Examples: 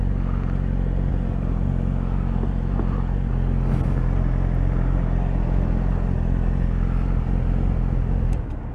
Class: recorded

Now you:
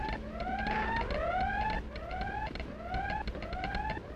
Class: recorded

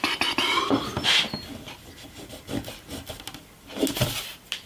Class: recorded